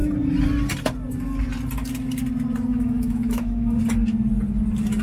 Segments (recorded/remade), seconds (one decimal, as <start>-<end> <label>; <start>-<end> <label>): 0.0-2.7 recorded; 2.7-3.8 remade; 3.8-5.0 recorded